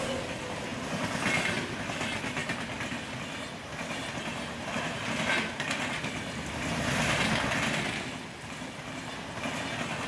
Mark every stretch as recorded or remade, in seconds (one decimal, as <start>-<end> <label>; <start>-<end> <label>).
0.0-10.1 recorded